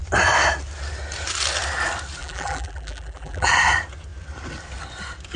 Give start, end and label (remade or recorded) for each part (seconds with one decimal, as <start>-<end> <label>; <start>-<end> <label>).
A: 0.0-2.2 recorded; 2.2-3.5 remade; 3.5-5.4 recorded